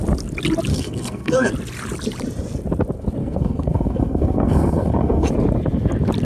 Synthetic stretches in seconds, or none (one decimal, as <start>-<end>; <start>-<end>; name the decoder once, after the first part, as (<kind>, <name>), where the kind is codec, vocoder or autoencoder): 0.7-1.5 (codec, SNAC); 3.2-5.3